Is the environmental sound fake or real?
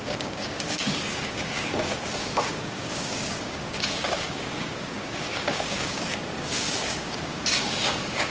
fake